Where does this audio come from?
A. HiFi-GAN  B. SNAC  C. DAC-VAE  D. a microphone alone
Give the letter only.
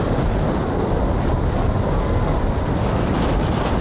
D